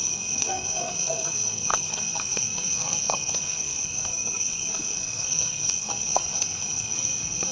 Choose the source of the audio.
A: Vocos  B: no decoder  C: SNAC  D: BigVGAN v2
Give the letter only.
C